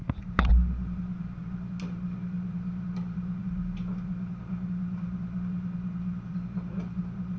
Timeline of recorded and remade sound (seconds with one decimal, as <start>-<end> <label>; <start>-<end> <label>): 0.0-7.4 recorded

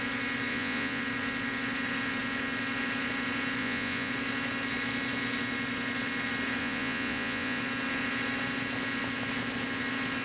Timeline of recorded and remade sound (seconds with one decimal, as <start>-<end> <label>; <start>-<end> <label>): 0.0-0.5 recorded; 0.5-1.0 remade; 1.0-3.6 recorded; 3.6-4.1 remade; 4.1-6.6 recorded; 6.6-7.6 remade; 7.6-10.2 recorded

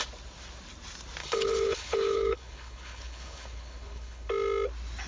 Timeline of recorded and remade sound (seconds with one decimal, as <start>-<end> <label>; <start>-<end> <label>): 0.0-1.2 recorded; 1.2-4.3 remade; 4.3-5.1 recorded

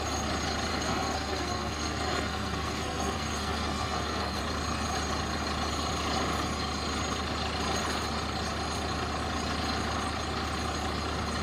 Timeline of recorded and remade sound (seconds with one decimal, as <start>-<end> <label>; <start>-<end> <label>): 0.0-0.7 recorded; 0.7-4.4 remade; 4.4-11.4 recorded

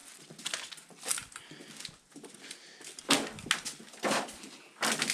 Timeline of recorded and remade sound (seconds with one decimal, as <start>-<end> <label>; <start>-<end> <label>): 0.0-5.1 recorded

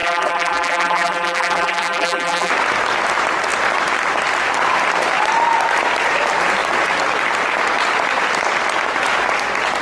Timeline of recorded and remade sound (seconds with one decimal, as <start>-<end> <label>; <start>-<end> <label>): 0.0-2.5 remade; 2.5-9.8 recorded

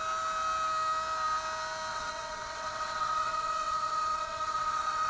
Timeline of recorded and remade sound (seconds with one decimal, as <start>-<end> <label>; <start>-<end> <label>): 0.0-1.9 recorded; 1.9-5.1 remade